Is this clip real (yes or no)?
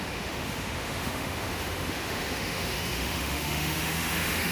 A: no